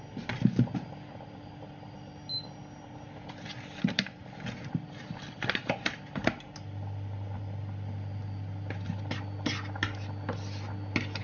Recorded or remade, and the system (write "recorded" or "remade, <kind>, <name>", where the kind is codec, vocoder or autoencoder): recorded